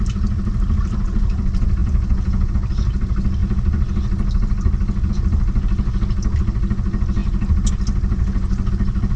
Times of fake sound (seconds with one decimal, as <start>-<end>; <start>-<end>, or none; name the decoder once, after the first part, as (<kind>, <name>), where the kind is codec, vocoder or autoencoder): 1.8-2.5 (vocoder, Vocos)